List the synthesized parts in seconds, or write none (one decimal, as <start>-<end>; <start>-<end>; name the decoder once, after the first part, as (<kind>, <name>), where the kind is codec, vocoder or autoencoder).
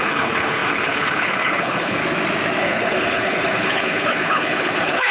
0.0-2.0 (codec, HILCodec); 2.6-5.1